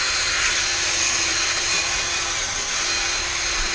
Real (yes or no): yes